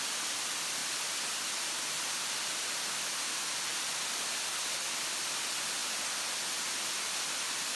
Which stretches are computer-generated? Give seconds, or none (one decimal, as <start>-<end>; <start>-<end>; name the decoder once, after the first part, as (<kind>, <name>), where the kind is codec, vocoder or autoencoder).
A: 0.8-1.8 (vocoder, BigVGAN v2)